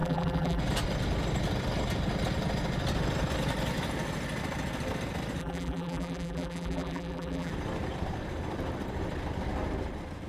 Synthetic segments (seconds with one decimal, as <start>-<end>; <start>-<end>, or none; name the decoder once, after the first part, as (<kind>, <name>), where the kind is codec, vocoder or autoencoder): 0.0-0.6 (vocoder, BigVGAN v2); 5.4-7.5